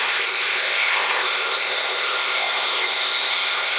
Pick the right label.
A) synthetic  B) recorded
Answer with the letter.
A